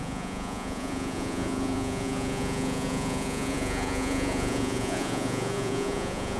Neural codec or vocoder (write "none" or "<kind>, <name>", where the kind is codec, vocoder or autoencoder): vocoder, Vocos